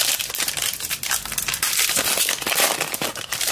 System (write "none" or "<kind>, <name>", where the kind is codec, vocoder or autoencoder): none